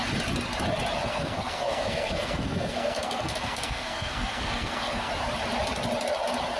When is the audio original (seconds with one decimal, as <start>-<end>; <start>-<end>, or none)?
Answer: 0.0-1.1; 5.1-6.6